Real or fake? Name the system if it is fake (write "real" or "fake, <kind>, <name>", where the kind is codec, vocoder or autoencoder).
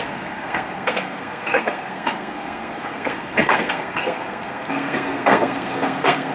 fake, codec, SNAC